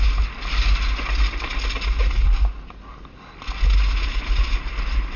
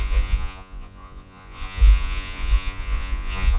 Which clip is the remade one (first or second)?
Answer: second